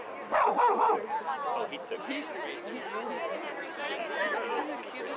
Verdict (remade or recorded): recorded